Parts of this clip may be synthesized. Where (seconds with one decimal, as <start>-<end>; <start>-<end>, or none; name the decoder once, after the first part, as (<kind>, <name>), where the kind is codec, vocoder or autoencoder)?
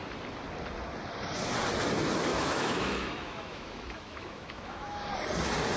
2.3-5.1 (autoencoder, DAC-VAE)